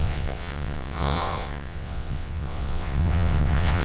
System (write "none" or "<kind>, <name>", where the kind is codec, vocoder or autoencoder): vocoder, WaveNeXt